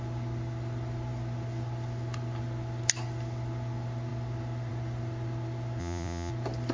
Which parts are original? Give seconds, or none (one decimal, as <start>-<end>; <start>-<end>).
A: 0.0-5.8; 6.3-6.7